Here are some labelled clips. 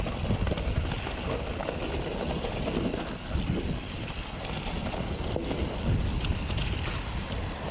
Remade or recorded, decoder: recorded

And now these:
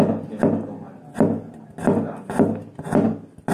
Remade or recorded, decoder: recorded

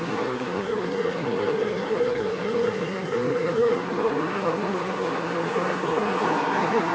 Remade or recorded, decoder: remade, codec, SNAC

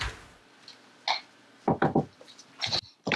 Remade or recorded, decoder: recorded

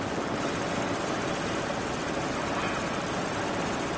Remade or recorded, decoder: recorded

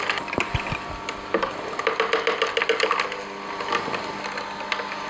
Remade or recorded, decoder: recorded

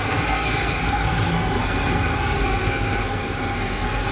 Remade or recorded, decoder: remade, codec, SNAC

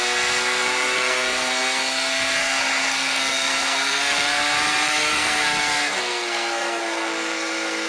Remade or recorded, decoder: remade, codec, SNAC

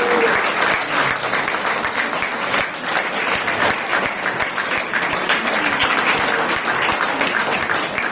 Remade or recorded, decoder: recorded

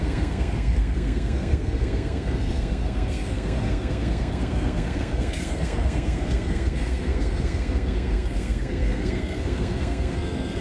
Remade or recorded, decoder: remade, codec, SNAC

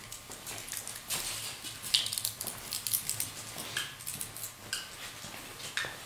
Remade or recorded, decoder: recorded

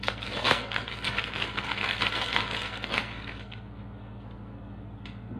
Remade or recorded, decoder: remade, codec, SNAC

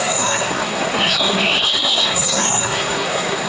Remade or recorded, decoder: remade, codec, SNAC